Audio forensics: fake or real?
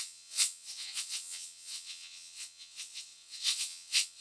fake